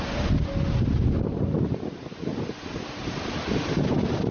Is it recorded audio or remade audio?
recorded